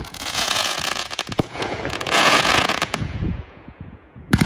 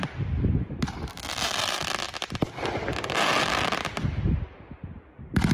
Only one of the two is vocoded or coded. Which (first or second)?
first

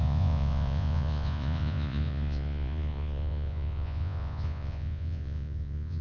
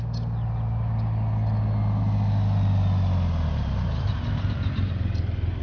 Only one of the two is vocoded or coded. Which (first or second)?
first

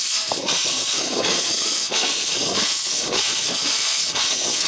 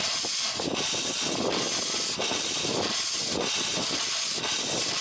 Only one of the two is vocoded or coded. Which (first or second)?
first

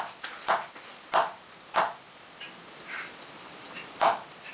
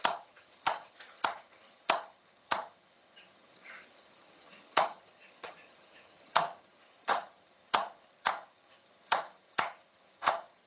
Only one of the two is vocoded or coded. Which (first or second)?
second